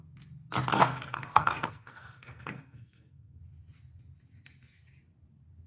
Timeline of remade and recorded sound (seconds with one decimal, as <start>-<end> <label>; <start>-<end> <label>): 0.0-0.7 recorded; 0.7-3.4 remade; 3.4-5.7 recorded